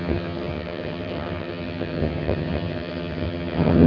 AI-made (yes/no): yes